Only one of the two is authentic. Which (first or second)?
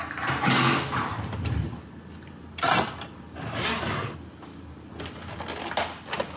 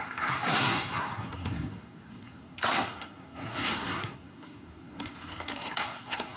first